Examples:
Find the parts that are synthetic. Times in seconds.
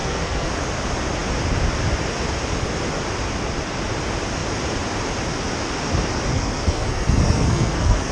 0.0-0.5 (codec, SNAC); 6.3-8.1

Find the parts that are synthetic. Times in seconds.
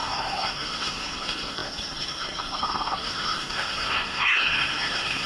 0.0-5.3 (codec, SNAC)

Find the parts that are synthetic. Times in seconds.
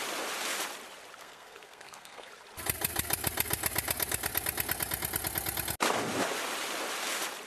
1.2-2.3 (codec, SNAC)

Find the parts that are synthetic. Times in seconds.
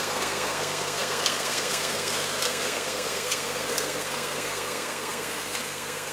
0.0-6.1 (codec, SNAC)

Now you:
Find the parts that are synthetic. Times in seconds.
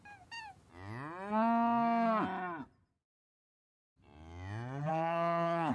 4.9-5.7 (codec, SNAC)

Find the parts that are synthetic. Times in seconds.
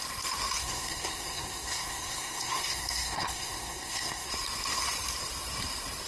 0.6-4.3 (codec, SNAC)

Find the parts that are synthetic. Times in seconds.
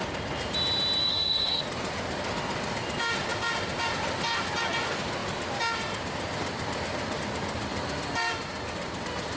1.0-1.6 (codec, SNAC)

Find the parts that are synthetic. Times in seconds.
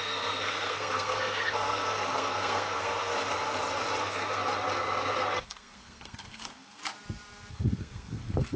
0.0-3.1 (codec, SNAC); 4.0-4.4; 5.4-6.8; 7.5-8.6